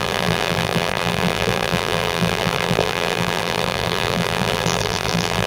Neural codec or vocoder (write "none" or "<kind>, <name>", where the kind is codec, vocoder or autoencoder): vocoder, BigVGAN v2